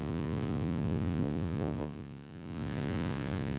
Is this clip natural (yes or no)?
no